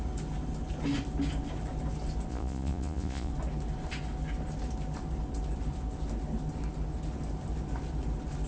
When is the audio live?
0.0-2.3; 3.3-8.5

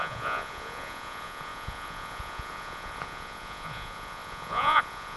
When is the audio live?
none

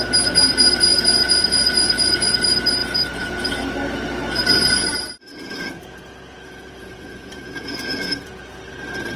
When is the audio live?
0.0-0.9; 2.3-2.8; 3.5-5.3; 8.6-9.2

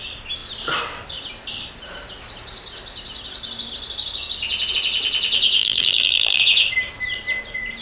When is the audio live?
0.0-5.6; 6.4-7.8

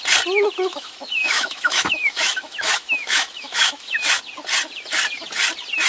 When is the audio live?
0.0-0.7; 4.2-5.9

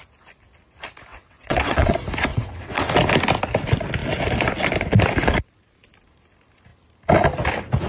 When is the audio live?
0.0-1.1; 1.9-2.3; 2.9-7.9

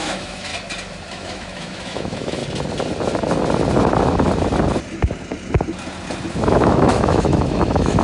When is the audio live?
0.5-1.1; 2.4-6.3

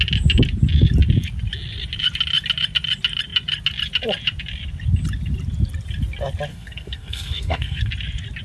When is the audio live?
0.0-6.5; 7.9-8.4